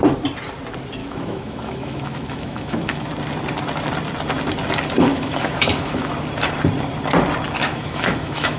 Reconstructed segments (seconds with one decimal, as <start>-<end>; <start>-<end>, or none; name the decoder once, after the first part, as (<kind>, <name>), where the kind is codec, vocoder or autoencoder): 1.0-3.1 (autoencoder, DAC-VAE); 5.1-6.1; 7.6-8.6